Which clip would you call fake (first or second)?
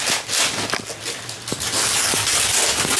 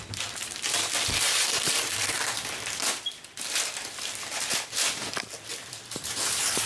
second